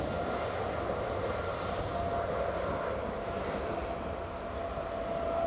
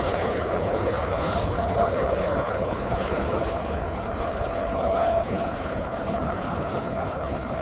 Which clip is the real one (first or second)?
first